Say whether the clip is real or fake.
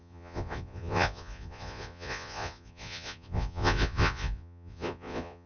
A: fake